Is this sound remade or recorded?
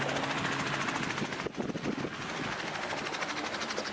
recorded